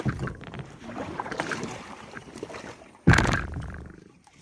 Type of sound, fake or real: fake